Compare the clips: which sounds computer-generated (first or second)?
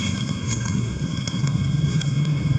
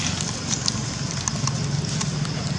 first